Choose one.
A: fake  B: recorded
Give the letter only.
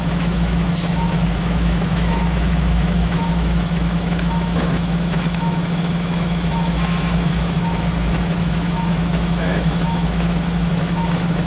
A